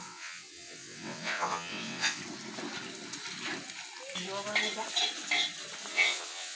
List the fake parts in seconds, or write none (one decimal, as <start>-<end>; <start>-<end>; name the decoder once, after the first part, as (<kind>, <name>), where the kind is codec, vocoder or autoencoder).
0.0-2.2 (vocoder, WaveNeXt); 5.9-6.6